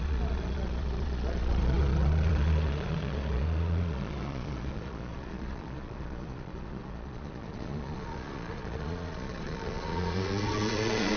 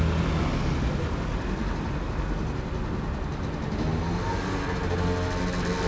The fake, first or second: first